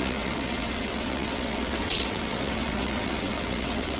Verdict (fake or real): fake